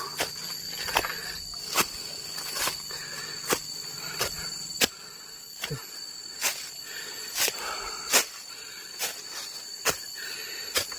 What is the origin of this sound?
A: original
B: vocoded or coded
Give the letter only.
A